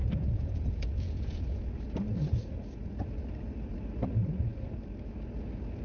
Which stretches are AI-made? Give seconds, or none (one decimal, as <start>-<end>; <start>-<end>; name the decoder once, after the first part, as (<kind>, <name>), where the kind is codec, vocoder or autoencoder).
0.0-1.6 (vocoder, Vocos)